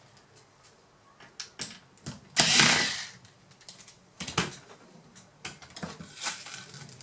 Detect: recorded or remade recorded